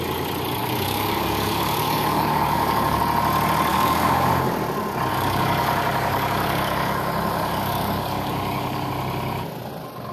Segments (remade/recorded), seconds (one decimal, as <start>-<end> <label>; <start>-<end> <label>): 0.0-0.6 recorded; 0.6-3.0 remade; 3.0-3.7 recorded; 3.7-4.3 remade; 4.3-5.1 recorded; 5.1-8.9 remade; 8.9-10.1 recorded